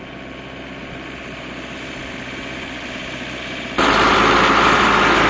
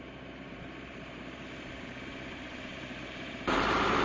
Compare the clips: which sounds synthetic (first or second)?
second